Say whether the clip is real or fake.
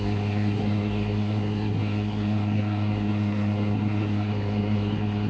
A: fake